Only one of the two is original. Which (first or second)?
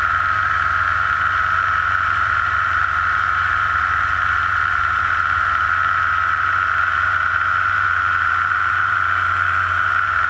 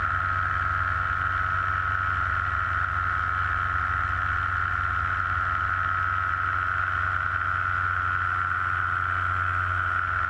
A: second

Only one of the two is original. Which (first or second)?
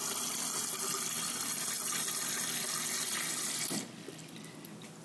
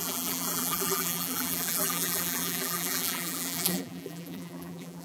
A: first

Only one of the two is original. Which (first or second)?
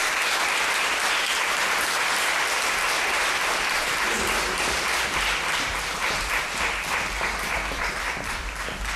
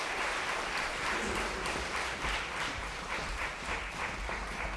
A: first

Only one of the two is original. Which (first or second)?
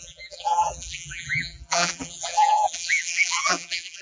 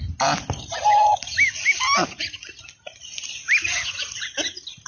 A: second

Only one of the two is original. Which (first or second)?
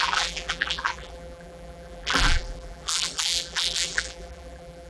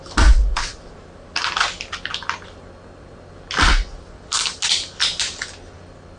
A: second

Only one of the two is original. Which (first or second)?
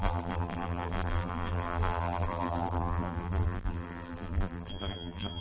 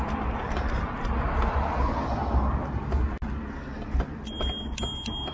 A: second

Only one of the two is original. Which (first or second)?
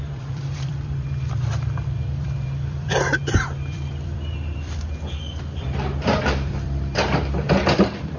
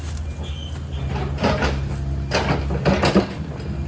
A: second